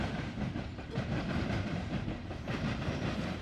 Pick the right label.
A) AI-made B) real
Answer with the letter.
A